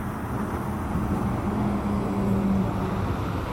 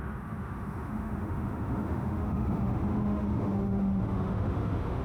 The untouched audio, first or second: first